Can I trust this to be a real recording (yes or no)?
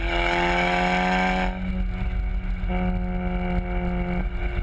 yes